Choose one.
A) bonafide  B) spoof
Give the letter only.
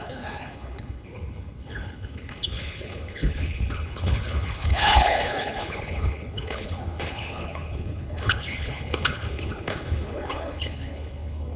B